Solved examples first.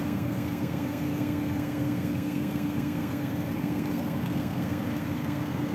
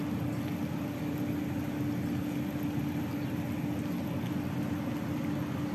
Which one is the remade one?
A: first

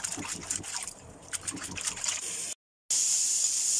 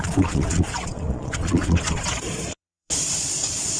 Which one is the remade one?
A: second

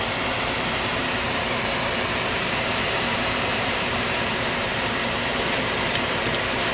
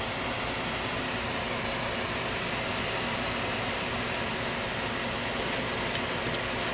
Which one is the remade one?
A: first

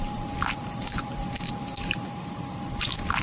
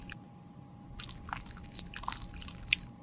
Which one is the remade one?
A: first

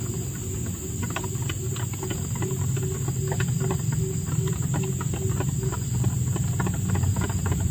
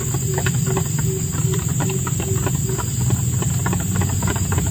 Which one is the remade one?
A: second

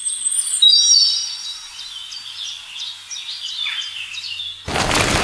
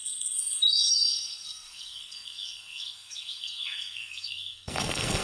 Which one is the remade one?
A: second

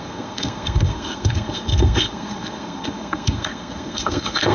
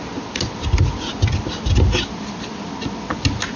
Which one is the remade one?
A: first